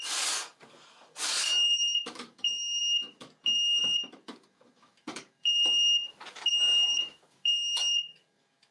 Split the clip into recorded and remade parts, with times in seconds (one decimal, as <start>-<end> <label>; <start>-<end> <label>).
0.0-8.7 remade